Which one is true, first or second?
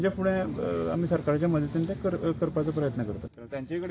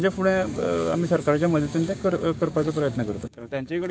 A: first